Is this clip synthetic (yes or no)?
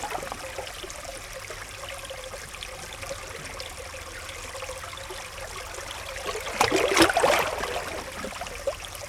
no